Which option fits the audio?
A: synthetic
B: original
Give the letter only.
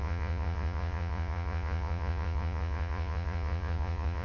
A